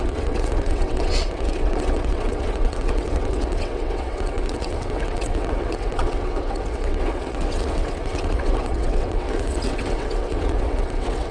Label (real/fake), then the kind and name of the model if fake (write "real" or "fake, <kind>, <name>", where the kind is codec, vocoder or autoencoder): fake, vocoder, WaveNeXt